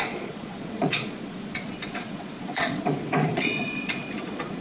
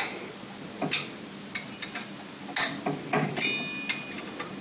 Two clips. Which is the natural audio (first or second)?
second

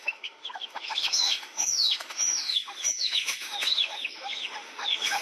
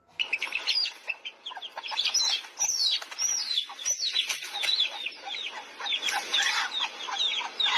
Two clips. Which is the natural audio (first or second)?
second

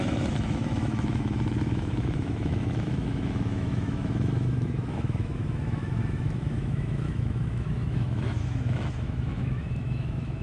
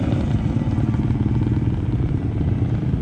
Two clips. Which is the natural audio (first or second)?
second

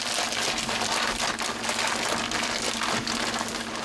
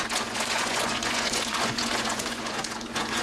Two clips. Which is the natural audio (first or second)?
first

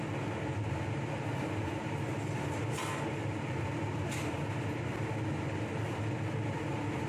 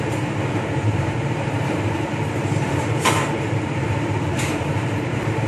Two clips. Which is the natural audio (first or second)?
first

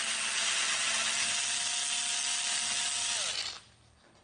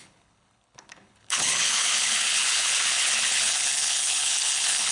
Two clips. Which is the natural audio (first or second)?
first